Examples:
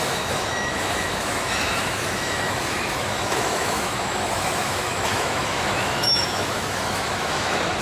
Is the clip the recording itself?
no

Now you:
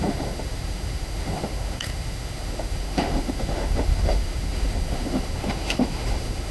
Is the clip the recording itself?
no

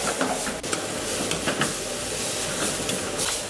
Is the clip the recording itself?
yes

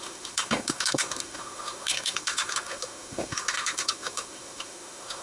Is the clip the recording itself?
no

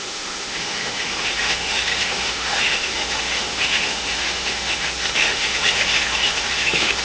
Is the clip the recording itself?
no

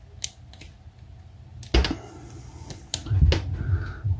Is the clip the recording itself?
yes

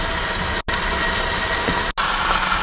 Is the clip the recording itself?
yes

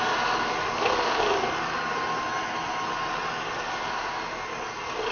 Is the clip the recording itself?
yes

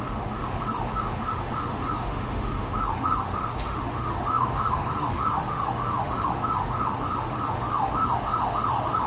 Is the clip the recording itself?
no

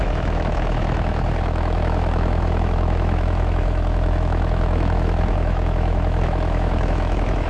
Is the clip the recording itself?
no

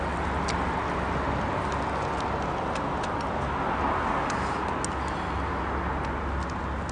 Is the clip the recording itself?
yes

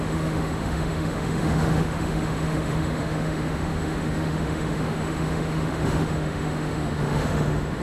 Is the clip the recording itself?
no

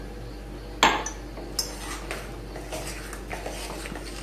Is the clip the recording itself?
yes